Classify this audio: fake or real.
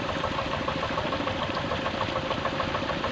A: fake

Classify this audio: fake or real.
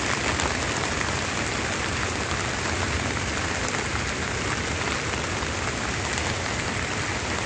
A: real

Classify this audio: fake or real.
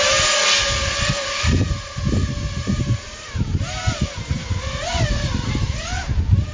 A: fake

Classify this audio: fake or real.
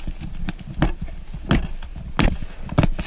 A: real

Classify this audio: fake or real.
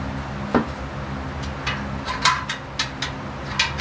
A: real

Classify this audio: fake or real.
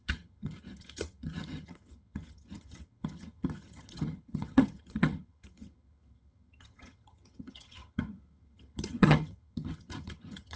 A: fake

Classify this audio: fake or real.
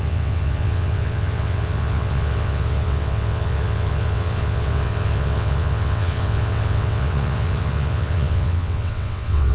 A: fake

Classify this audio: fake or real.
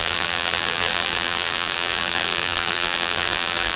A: fake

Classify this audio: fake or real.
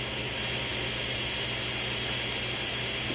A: real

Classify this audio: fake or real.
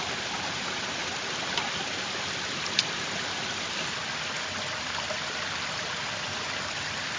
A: real